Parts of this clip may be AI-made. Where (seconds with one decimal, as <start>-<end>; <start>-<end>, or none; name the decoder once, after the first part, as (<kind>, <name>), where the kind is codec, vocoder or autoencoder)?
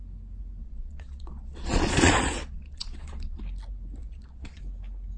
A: 0.6-3.4 (vocoder, Vocos); 4.0-4.6